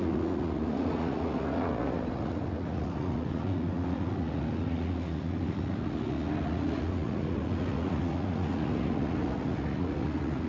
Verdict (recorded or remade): remade